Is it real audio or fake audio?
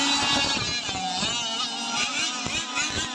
real